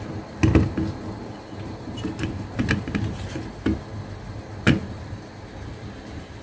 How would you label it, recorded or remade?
recorded